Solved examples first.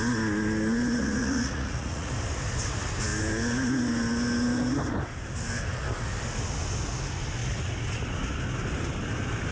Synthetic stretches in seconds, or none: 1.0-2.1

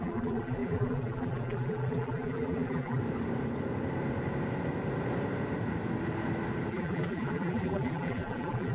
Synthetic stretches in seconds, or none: 0.0-3.0; 6.7-8.7